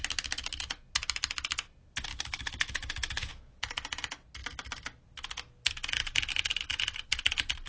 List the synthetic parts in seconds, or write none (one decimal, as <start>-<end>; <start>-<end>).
2.1-3.3